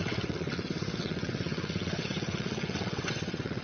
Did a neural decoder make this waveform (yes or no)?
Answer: yes